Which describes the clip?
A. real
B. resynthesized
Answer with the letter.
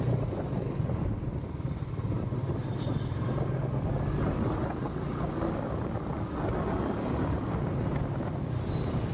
A